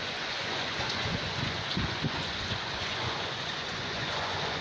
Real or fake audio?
fake